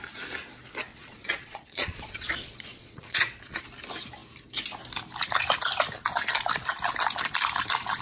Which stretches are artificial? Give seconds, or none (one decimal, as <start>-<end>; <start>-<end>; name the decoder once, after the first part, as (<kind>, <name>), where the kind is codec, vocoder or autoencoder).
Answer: 0.9-3.6 (vocoder, Vocos)